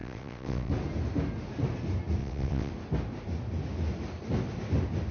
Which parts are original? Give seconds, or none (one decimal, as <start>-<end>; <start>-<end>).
0.7-2.2; 2.7-5.1